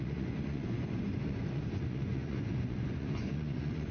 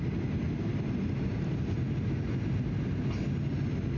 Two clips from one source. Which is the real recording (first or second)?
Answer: second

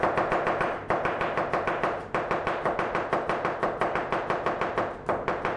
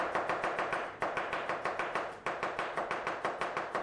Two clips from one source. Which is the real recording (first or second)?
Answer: first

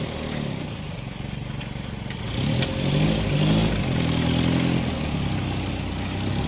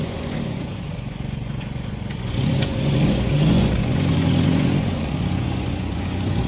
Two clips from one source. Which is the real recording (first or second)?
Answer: first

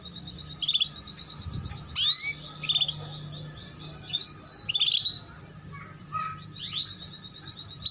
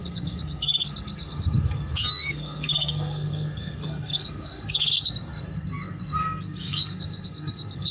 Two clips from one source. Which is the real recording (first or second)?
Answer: first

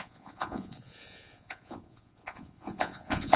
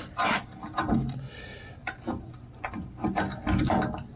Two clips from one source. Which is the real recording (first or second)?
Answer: second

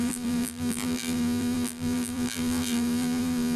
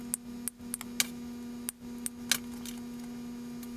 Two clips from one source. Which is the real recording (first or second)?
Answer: second